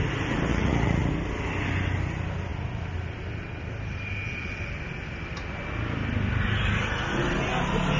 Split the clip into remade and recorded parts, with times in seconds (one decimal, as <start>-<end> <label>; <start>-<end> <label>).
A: 0.0-0.5 recorded; 0.5-1.1 remade; 1.1-8.0 recorded